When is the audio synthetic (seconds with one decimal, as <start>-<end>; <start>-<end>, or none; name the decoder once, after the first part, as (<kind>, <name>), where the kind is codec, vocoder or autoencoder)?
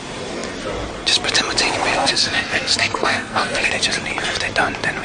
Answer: 1.9-3.7 (codec, SNAC)